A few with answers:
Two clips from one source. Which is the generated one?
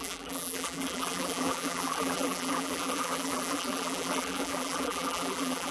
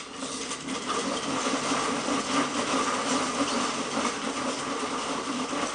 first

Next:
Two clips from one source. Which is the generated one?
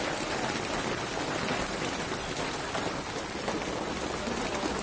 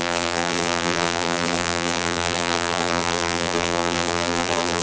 second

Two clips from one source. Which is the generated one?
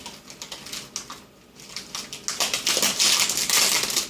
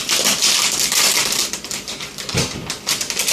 second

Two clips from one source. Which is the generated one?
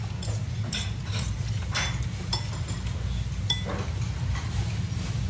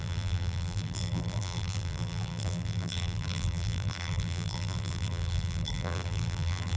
second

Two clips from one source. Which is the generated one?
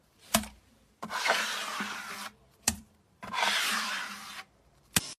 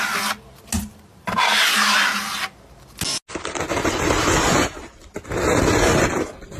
first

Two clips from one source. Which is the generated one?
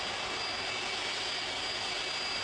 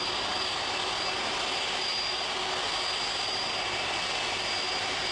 second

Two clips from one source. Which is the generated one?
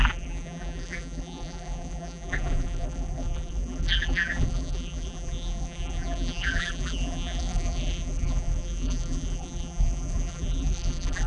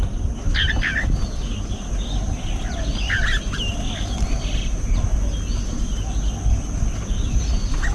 first